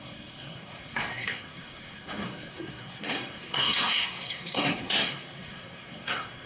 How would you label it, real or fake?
fake